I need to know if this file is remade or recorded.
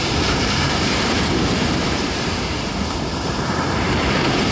remade